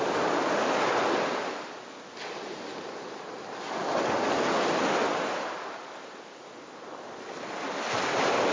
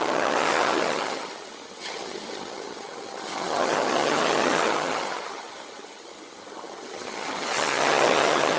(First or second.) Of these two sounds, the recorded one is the first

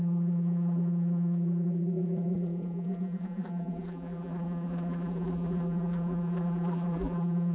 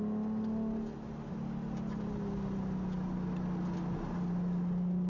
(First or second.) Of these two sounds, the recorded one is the second